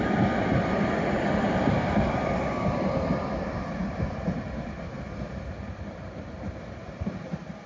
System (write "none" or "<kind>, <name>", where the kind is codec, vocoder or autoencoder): vocoder, BigVGAN v2